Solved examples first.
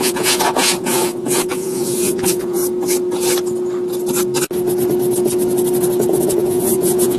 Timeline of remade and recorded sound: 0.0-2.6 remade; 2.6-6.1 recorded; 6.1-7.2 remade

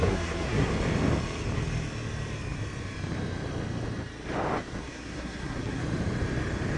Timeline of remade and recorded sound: 0.0-0.7 remade; 0.7-4.8 recorded; 4.8-5.8 remade; 5.8-6.8 recorded